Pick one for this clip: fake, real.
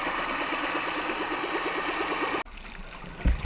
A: real